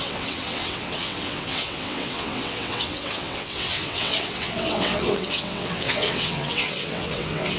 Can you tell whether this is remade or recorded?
remade